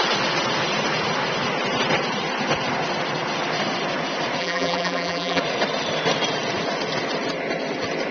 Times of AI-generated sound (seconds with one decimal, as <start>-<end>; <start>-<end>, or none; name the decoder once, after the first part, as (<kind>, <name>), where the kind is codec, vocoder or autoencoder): 4.4-5.4 (vocoder, BigVGAN v2)